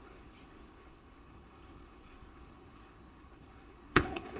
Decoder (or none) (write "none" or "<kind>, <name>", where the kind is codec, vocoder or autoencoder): codec, HILCodec